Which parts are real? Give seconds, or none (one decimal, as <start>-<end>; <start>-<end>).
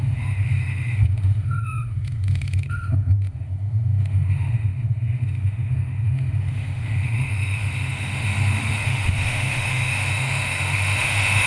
none